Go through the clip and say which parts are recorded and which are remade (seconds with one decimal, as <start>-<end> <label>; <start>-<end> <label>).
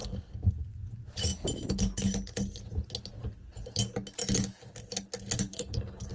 0.0-0.5 remade; 0.5-5.5 recorded; 5.5-6.1 remade